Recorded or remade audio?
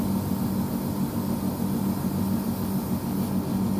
recorded